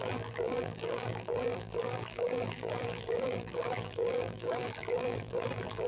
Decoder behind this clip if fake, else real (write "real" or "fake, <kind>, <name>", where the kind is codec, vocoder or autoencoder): fake, vocoder, BigVGAN v2